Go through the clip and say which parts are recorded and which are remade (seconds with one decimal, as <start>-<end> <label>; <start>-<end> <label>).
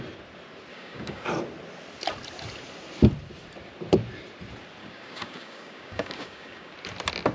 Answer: 0.0-0.7 recorded; 0.7-1.3 remade; 1.3-4.8 recorded; 4.8-6.7 remade; 6.7-7.3 recorded